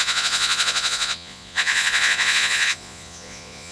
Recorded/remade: remade